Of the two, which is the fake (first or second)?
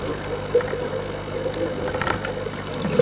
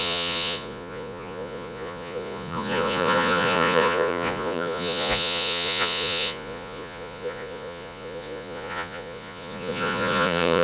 second